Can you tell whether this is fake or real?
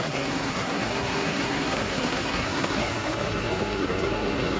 fake